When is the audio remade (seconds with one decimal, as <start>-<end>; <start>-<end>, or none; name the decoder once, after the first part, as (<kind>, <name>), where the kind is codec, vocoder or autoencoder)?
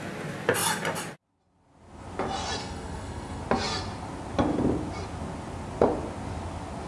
2.6-3.4 (codec, SNAC)